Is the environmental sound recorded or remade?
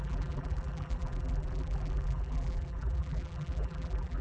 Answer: remade